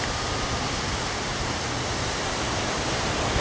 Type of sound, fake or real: real